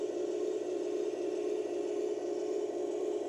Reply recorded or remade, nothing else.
remade